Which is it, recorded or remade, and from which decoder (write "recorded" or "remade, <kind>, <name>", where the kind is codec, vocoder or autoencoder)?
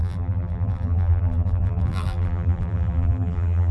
remade, vocoder, BigVGAN v2